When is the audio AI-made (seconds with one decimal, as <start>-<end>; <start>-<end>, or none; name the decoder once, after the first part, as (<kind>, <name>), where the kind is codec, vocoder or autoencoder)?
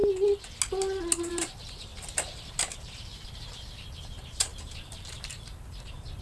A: 1.3-1.9 (vocoder, BigVGAN v2); 2.5-6.2